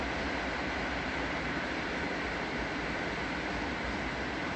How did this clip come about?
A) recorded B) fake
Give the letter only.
A